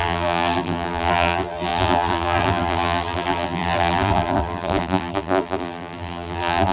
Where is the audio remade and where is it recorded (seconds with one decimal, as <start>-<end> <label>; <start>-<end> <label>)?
0.0-6.7 remade